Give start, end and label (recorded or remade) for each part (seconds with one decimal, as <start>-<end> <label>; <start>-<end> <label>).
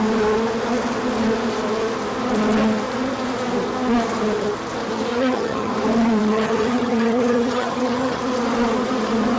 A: 0.0-5.1 recorded; 5.1-5.7 remade; 5.7-6.2 recorded; 6.2-8.2 remade; 8.2-9.4 recorded